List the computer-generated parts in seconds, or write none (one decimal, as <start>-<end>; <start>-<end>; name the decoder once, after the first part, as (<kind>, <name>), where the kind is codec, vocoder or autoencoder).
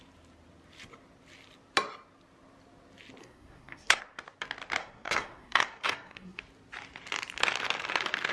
3.2-4.0 (codec, SNAC); 4.8-6.4